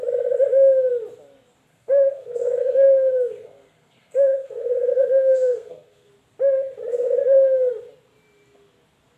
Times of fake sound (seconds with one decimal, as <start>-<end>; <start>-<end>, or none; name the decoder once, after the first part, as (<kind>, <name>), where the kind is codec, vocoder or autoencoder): 1.7-6.1 (codec, SNAC); 6.9-7.7

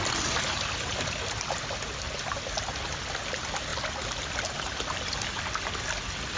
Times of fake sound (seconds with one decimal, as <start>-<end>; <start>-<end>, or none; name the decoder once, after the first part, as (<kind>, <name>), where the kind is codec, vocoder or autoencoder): none

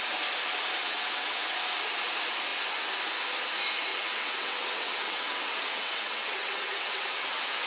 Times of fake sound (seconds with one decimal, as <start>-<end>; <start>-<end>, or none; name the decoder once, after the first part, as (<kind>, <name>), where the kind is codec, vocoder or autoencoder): 0.8-1.6 (vocoder, WaveNeXt); 3.9-7.7

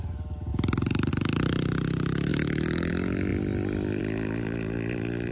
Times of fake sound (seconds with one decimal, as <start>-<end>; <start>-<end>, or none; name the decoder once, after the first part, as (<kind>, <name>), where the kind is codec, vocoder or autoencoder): 0.5-1.1 (vocoder, BigVGAN v2); 2.3-2.9

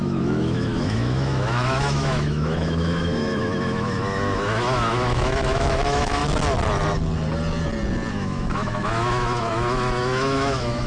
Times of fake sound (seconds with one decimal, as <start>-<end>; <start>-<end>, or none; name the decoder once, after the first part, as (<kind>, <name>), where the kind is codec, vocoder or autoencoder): 0.0-6.2 (autoencoder, DAC-VAE); 8.1-10.9

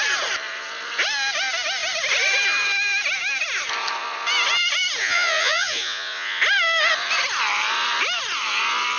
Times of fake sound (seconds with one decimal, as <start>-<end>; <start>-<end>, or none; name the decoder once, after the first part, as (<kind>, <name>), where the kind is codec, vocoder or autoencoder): 5.0-6.4 (vocoder, Vocos)

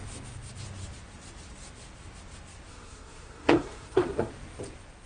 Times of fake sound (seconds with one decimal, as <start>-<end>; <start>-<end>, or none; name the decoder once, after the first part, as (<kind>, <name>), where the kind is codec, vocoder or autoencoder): 2.7-4.3 (codec, SNAC)